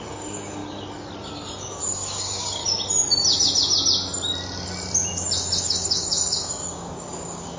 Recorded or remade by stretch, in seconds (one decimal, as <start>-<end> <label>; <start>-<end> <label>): 0.0-0.6 remade; 0.6-1.6 recorded; 1.6-2.6 remade; 2.6-5.6 recorded; 5.6-7.6 remade